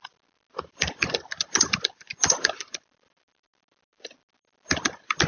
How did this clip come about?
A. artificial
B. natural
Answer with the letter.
B